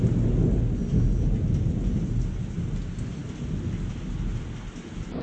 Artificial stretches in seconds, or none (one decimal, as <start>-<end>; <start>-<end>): none